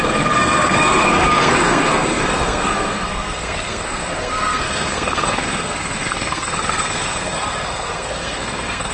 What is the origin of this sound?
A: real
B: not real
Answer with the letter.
B